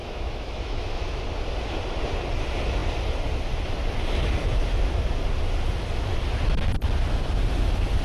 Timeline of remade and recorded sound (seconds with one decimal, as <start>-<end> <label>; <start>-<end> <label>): 0.0-1.2 remade; 1.2-8.0 recorded